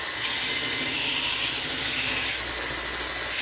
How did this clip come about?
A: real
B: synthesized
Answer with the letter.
A